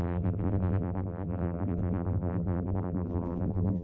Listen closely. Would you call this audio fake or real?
fake